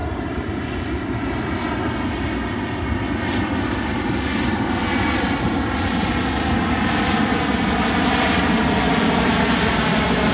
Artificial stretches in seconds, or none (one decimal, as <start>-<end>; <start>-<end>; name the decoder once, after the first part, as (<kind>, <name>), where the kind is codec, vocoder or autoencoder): 0.0-1.3 (vocoder, BigVGAN v2)